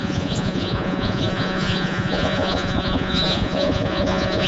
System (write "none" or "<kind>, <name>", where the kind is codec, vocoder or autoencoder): vocoder, Vocos